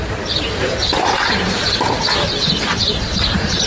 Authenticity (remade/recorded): remade